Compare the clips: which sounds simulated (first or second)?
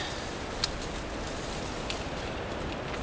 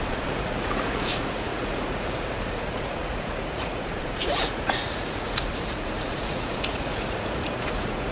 second